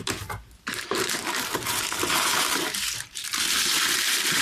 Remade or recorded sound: remade